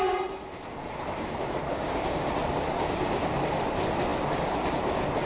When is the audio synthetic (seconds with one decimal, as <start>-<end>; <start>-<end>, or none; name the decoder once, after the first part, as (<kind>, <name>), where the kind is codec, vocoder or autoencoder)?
1.7-2.3 (codec, DAC)